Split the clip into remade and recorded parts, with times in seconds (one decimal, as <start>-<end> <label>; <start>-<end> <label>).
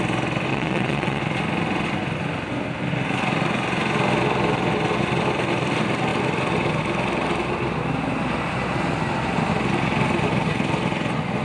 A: 0.0-0.5 recorded; 0.5-1.2 remade; 1.2-11.4 recorded